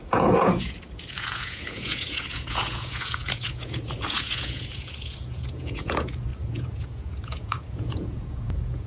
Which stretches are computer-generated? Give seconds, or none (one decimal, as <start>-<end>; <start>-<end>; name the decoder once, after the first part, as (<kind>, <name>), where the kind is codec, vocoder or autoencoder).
0.0-8.9 (vocoder, Vocos)